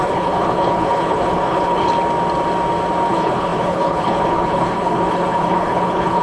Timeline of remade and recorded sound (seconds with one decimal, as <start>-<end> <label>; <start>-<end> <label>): 0.0-1.9 remade; 1.9-3.1 recorded; 3.1-6.2 remade